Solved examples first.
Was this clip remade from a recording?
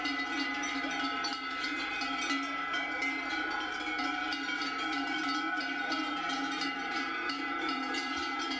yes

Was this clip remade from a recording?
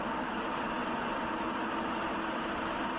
no